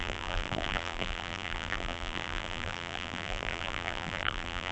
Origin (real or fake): fake